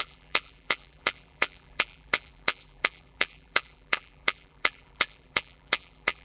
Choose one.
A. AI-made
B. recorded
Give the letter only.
A